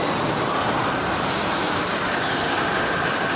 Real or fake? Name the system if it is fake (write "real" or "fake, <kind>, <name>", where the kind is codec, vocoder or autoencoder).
fake, vocoder, BigVGAN v2